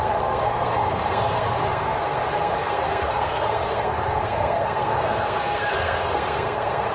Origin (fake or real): fake